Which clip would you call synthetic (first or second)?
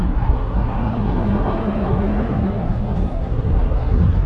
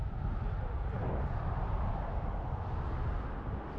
first